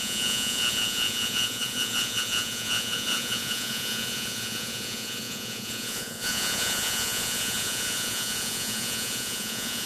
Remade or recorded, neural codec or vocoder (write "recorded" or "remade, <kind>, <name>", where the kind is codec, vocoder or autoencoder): remade, vocoder, Vocos